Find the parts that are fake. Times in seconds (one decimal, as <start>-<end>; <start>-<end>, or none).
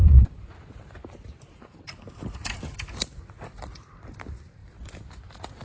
0.0-2.6; 4.6-5.6